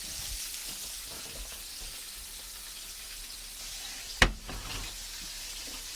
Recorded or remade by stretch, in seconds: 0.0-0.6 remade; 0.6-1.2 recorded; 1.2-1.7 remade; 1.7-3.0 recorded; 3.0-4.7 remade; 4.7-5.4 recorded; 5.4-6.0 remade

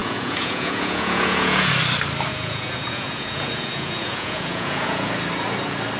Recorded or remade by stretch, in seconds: 0.0-1.7 remade; 1.7-2.3 recorded; 2.3-5.1 remade; 5.1-6.0 recorded

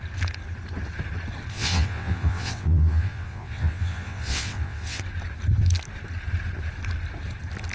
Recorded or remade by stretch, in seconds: 0.0-1.5 recorded; 1.5-5.0 remade; 5.0-7.7 recorded

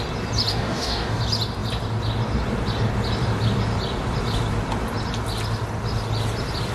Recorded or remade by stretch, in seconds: 0.0-0.5 recorded; 0.5-1.2 remade; 1.2-6.7 recorded

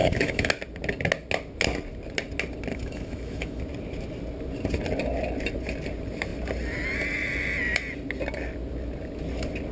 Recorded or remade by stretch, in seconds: 0.0-0.5 remade; 0.5-2.7 recorded; 2.7-3.6 remade; 3.6-9.7 recorded

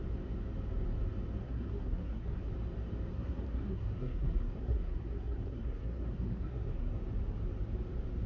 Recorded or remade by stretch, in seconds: 0.0-1.4 recorded; 1.4-2.5 remade; 2.5-3.1 recorded; 3.1-7.0 remade; 7.0-8.3 recorded